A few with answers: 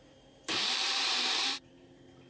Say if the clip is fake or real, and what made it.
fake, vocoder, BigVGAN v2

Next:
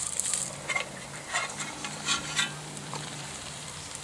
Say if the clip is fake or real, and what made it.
fake, vocoder, BigVGAN v2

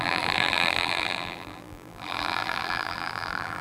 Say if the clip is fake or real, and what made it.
fake, vocoder, BigVGAN v2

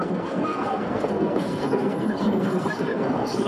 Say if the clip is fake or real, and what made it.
fake, codec, SNAC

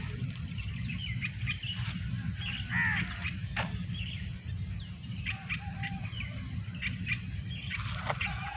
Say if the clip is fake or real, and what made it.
real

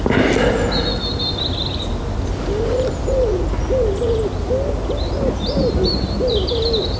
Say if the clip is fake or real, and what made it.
real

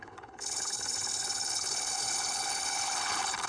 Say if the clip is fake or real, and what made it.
fake, codec, HILCodec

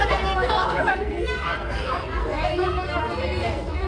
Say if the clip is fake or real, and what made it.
fake, codec, SNAC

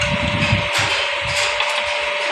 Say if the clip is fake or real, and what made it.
real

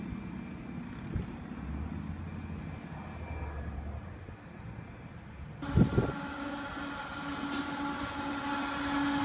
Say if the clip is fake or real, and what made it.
real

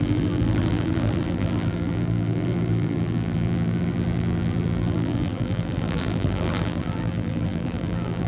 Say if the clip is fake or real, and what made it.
fake, vocoder, BigVGAN v2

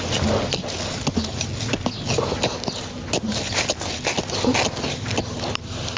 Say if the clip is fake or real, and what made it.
real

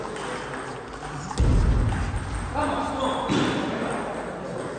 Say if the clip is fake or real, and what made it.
real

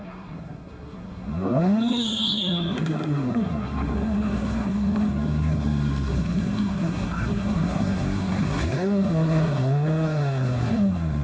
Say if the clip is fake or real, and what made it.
fake, codec, SNAC